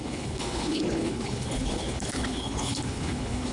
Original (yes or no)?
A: no